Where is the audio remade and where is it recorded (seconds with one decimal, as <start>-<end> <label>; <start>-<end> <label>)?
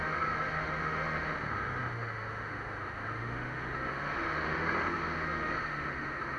0.0-6.4 remade